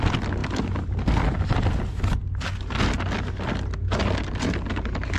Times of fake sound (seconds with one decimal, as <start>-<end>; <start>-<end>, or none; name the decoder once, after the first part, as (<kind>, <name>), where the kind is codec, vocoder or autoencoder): none